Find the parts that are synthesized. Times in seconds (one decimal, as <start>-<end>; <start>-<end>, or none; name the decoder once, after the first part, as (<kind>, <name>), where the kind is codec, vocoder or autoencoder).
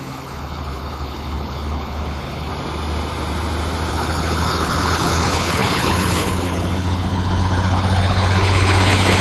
0.0-2.5 (codec, HILCodec); 3.9-9.2